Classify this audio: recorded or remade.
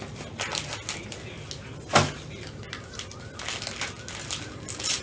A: recorded